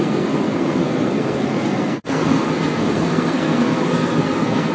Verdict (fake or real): fake